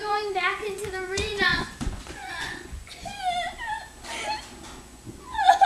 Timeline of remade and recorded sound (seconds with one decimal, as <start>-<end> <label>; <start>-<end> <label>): 0.0-3.1 remade; 3.1-4.8 recorded; 4.8-5.7 remade